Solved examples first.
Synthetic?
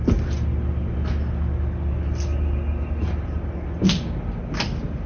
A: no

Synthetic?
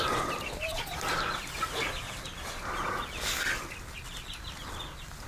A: no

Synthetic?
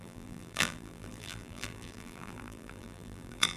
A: yes